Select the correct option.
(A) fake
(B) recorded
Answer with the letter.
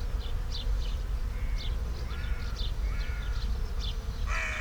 B